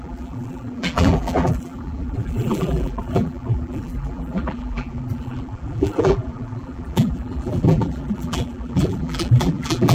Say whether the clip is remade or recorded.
remade